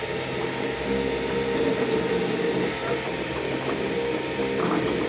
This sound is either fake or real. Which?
real